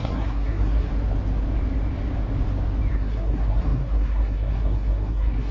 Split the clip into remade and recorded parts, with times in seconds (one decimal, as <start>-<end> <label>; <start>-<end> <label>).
0.0-0.9 remade; 0.9-2.9 recorded; 2.9-5.5 remade